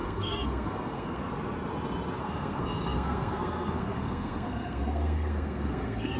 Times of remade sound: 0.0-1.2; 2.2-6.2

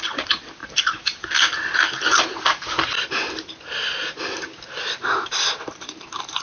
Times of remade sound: none

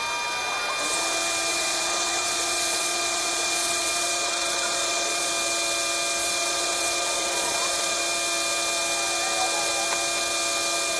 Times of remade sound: 1.5-5.3; 6.2-8.0

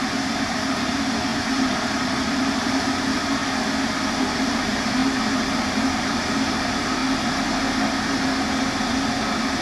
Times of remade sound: 0.0-3.4; 4.1-7.0

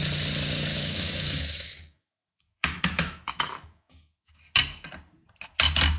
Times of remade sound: 0.7-4.3